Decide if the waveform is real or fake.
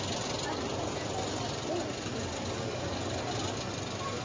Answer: real